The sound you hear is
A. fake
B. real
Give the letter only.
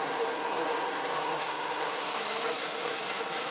A